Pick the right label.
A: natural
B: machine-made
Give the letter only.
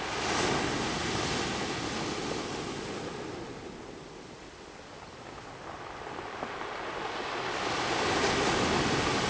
A